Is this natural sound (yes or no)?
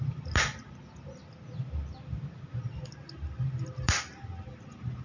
yes